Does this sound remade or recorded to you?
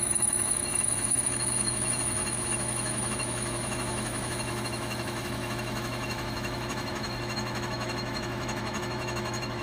remade